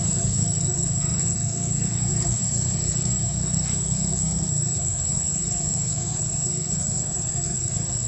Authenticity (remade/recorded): remade